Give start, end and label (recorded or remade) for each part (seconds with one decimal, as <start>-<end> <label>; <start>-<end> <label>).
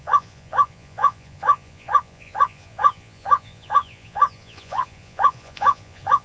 0.0-6.2 remade